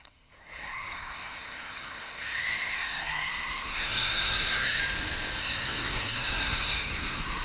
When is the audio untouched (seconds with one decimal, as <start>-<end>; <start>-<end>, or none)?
4.8-5.4